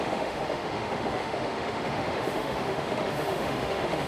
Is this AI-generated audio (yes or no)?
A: yes